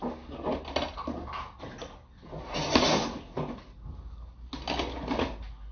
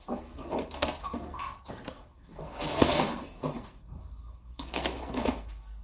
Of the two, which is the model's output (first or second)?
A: second